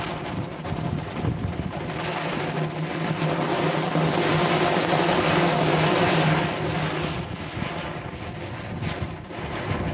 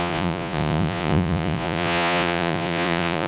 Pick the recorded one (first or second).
first